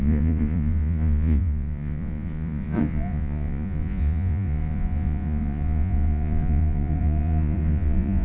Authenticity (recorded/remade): remade